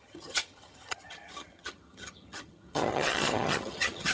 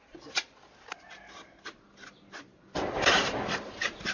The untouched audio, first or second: second